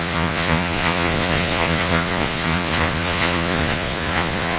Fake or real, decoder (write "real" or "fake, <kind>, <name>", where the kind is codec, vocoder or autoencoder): fake, vocoder, Vocos